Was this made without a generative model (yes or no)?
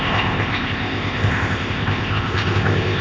no